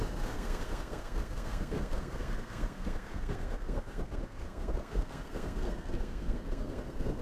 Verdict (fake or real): fake